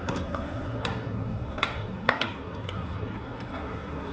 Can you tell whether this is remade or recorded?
remade